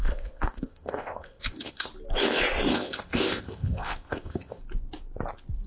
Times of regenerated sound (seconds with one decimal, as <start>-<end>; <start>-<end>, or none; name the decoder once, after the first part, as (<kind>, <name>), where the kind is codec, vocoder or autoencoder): 0.0-1.9 (codec, ZipCodec); 2.7-4.6